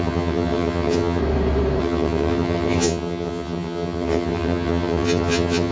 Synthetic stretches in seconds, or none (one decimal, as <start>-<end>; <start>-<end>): 0.0-1.2; 1.8-5.7